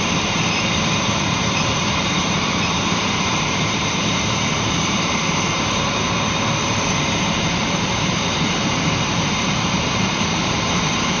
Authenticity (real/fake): fake